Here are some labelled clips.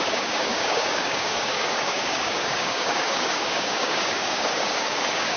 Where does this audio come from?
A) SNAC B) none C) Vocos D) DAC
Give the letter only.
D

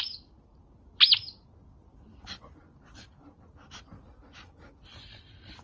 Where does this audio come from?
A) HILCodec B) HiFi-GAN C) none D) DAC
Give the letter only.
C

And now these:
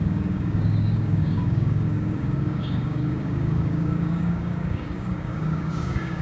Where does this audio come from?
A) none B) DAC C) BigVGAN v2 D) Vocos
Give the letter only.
B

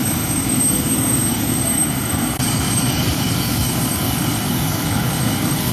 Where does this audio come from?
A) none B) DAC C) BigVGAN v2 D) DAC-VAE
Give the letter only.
B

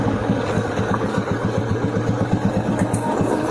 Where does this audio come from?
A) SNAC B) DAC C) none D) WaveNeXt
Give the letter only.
B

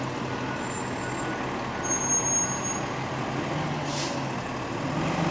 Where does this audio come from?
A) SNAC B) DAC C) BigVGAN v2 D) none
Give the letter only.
D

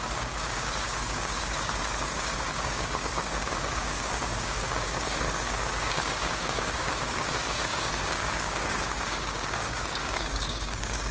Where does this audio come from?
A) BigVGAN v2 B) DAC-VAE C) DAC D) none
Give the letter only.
C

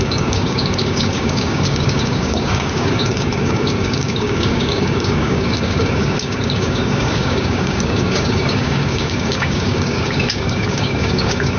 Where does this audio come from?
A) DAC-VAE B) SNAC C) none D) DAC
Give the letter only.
D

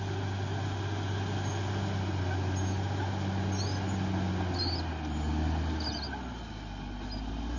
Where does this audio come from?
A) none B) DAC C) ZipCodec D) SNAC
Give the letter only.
A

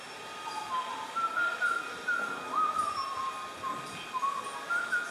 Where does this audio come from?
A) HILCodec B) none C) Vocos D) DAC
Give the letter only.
B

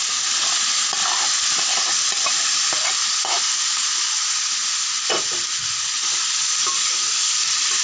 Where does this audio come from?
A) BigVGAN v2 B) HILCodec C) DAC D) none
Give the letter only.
D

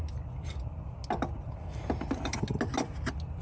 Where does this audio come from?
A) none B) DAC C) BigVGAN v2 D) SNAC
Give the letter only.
A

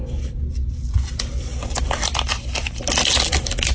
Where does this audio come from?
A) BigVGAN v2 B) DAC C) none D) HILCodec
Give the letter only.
C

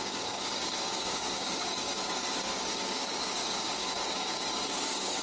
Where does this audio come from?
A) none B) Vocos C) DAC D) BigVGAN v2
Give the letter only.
C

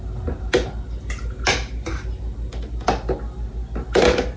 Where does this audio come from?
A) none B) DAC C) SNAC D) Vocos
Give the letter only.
A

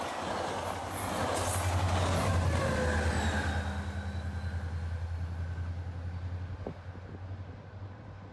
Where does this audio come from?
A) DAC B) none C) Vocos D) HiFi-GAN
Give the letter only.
B